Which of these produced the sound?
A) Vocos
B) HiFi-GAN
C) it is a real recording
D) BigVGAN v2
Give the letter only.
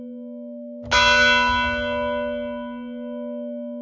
C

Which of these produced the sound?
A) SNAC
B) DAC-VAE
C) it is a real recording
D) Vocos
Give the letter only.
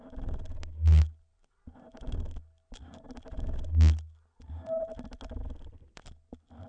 C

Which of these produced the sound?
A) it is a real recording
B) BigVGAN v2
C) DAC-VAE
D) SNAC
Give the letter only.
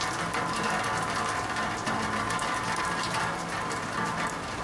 B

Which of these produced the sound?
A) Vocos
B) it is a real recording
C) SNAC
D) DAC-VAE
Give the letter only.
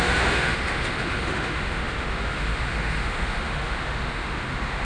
D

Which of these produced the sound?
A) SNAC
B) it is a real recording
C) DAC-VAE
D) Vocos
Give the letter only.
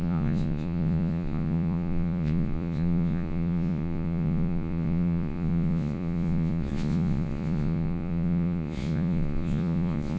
D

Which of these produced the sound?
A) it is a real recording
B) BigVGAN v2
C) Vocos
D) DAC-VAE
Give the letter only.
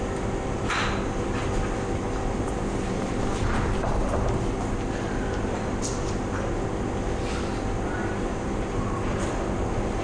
A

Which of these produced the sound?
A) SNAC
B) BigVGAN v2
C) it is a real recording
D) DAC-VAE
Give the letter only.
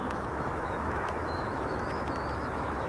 D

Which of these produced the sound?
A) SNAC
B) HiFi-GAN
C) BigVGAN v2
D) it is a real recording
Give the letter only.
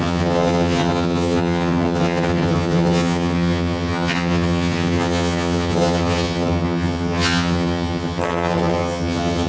B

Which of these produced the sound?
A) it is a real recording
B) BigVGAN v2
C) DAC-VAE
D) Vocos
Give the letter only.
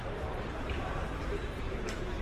B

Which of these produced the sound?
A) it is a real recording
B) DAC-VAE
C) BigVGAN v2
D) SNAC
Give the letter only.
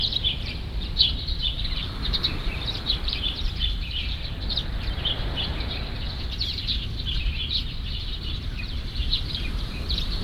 C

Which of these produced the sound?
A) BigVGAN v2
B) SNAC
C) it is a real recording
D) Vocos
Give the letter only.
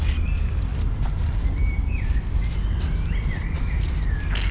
C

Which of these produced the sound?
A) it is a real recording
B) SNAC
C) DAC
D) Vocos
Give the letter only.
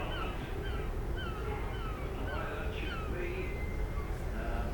A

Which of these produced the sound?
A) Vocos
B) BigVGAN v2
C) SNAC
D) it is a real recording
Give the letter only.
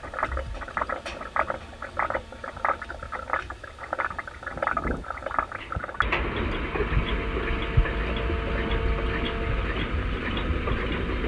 D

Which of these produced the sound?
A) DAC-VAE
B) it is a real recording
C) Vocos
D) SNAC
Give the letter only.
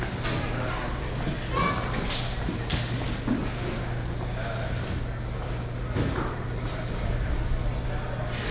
B